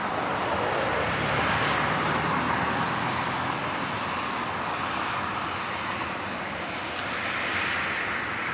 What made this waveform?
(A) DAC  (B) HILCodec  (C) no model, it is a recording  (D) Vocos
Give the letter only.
C